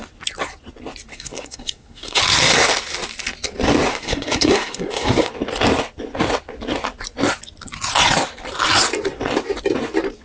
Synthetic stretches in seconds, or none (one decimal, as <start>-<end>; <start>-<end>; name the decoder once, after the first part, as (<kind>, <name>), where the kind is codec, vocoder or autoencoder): 1.1-2.2 (codec, SNAC); 3.9-5.3

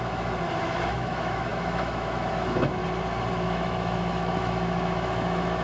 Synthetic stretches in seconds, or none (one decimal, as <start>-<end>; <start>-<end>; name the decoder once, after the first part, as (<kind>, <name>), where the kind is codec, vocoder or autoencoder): 0.0-2.8 (autoencoder, DAC-VAE); 3.3-5.6

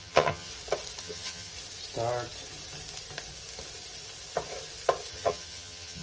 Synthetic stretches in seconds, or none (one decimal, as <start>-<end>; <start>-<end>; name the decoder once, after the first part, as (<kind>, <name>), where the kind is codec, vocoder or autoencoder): 0.0-0.5 (vocoder, HiFi-GAN); 1.0-1.5; 5.1-6.0

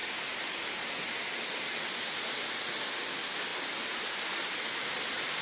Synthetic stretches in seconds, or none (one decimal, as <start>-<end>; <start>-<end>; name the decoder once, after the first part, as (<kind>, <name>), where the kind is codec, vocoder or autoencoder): none

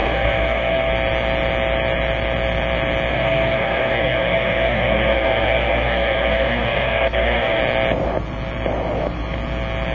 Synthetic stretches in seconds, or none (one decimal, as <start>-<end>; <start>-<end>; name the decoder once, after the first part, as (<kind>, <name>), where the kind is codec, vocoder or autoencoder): 0.0-0.9 (codec, SNAC); 3.1-7.6